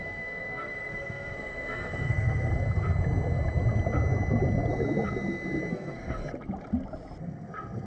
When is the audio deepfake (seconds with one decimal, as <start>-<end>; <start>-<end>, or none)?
0.0-2.5; 5.7-6.2; 7.2-7.9